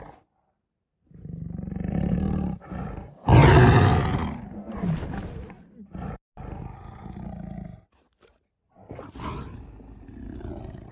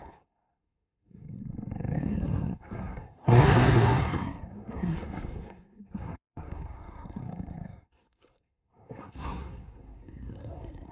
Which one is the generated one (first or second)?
second